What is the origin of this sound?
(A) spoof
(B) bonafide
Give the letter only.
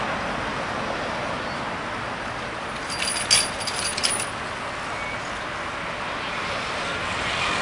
B